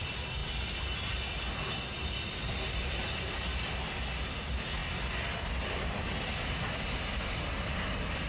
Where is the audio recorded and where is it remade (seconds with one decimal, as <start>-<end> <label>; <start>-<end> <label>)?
0.0-8.3 recorded

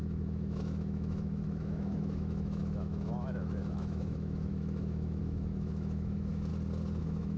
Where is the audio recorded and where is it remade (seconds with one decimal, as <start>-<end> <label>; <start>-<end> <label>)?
0.0-6.5 remade; 6.5-7.0 recorded; 7.0-7.4 remade

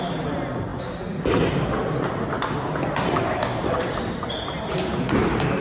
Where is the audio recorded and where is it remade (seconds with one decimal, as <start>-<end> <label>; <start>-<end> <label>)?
0.0-5.6 recorded